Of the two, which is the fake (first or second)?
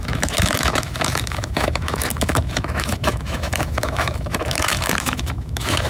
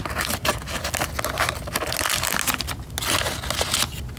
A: first